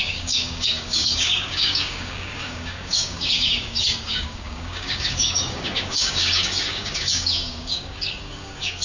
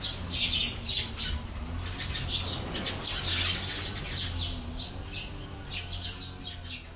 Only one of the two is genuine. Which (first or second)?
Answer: second